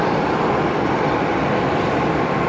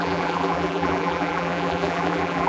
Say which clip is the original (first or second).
first